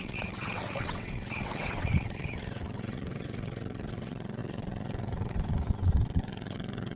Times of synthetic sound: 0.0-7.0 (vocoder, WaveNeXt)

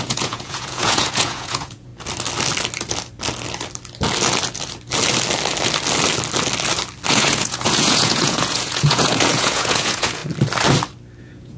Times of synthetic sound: 0.0-1.9 (vocoder, Vocos); 7.1-10.2; 11.2-11.6

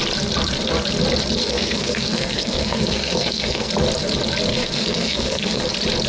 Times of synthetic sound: 1.4-3.7 (codec, SNAC); 4.5-5.6

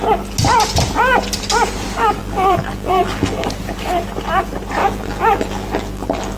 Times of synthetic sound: 2.2-3.4 (vocoder, BigVGAN v2); 4.8-6.4

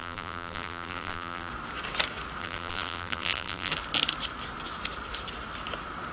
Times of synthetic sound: 0.0-1.5 (vocoder, BigVGAN v2); 2.4-3.7